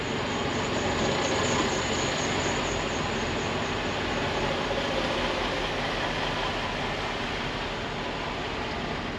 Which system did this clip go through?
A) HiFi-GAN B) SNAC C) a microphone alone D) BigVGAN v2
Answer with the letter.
C